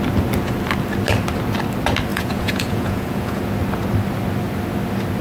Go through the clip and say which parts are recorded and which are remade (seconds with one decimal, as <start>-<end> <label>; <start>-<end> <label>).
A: 0.0-2.1 recorded; 2.1-3.4 remade; 3.4-5.2 recorded